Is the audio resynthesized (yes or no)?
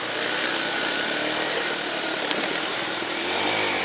no